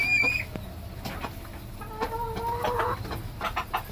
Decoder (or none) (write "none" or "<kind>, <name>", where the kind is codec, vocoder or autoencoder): none